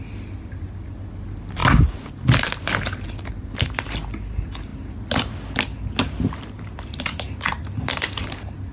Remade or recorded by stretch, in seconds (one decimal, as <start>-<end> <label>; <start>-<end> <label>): 0.0-8.7 recorded